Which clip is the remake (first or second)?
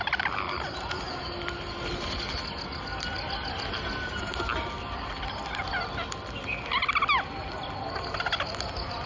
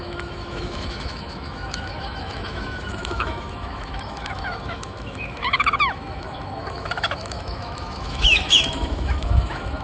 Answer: second